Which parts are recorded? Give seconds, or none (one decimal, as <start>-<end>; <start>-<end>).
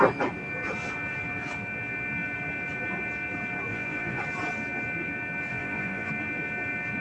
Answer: 0.0-3.7; 4.2-5.5; 6.1-7.0